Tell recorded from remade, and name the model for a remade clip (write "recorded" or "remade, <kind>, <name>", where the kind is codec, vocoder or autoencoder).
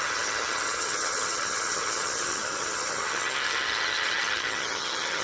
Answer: remade, vocoder, HiFi-GAN